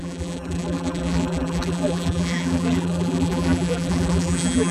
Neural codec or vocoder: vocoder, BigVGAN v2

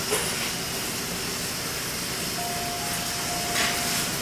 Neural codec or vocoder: none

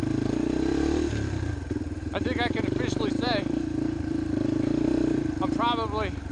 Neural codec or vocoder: vocoder, BigVGAN v2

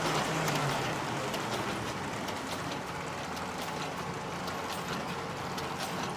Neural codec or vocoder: none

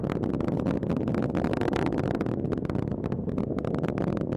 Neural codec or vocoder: none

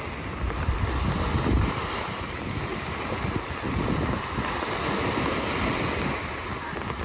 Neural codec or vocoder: none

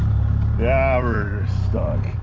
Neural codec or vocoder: vocoder, BigVGAN v2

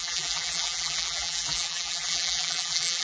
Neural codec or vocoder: vocoder, BigVGAN v2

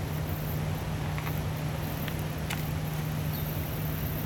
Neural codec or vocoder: none